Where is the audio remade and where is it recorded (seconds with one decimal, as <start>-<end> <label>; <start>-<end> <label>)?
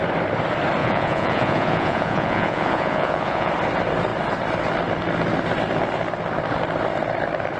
0.0-0.8 recorded; 0.8-3.5 remade; 3.5-7.6 recorded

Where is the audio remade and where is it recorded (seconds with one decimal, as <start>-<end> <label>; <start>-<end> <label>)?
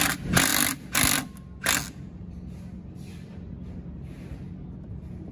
0.0-5.3 recorded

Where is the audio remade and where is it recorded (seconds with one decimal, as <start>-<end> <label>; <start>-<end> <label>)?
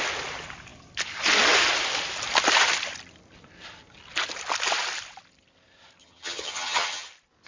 0.0-6.0 recorded; 6.0-7.1 remade; 7.1-7.5 recorded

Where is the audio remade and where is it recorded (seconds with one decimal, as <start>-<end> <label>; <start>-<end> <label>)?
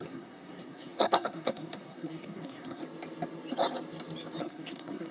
0.0-2.8 remade; 2.8-4.4 recorded; 4.4-5.1 remade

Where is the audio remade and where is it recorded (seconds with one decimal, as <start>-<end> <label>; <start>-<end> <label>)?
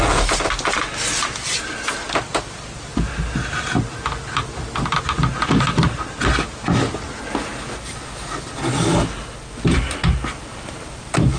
0.0-10.5 recorded; 10.5-11.4 remade